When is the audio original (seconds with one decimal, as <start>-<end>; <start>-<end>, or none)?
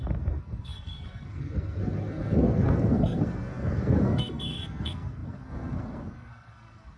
none